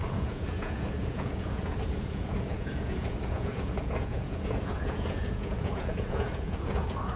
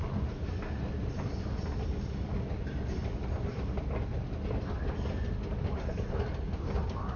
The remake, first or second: first